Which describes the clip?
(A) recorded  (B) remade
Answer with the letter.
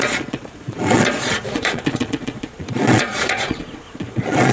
B